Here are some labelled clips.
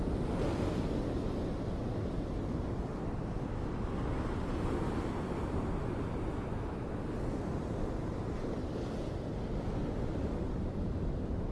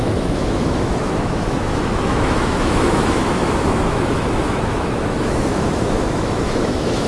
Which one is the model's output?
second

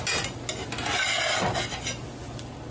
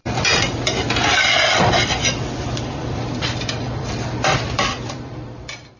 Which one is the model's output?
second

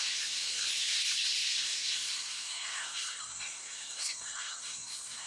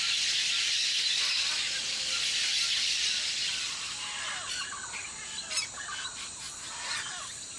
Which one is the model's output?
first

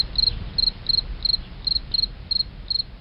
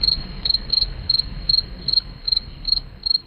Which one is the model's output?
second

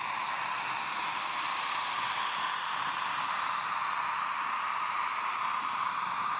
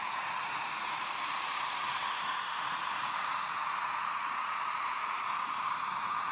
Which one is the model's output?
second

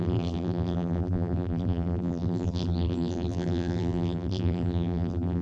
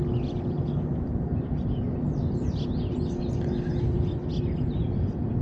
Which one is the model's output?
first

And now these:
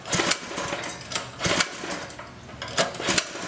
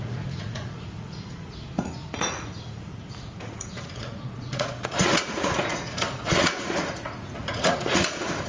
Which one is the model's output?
second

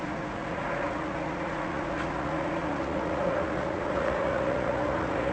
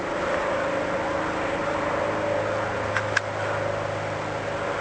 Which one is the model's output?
first